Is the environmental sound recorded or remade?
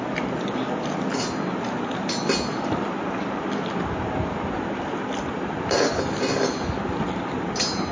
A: recorded